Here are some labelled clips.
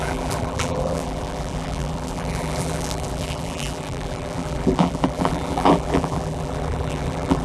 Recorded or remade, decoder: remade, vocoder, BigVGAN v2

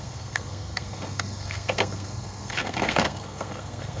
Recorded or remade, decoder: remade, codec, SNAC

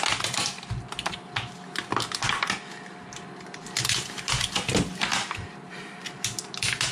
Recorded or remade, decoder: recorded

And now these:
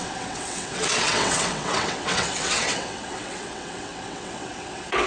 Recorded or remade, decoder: remade, vocoder, WaveNeXt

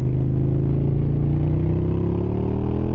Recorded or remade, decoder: recorded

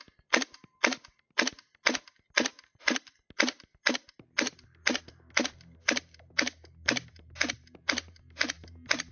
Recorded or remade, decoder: recorded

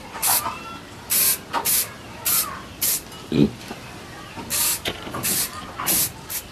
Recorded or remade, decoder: remade, vocoder, BigVGAN v2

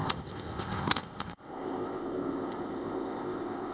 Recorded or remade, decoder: remade, codec, ZipCodec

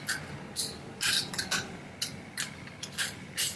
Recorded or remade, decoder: recorded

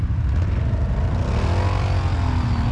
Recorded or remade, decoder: recorded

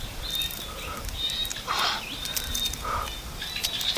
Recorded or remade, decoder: recorded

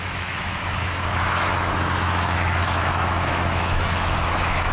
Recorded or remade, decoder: remade, autoencoder, DAC-VAE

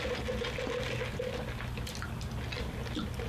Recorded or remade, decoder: recorded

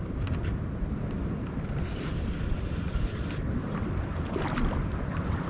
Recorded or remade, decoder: recorded